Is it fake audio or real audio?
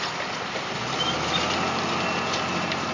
real